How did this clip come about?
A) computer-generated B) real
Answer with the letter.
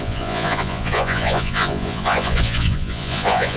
A